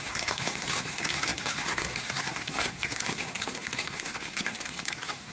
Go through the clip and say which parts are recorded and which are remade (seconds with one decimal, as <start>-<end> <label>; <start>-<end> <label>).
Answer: 0.0-5.3 remade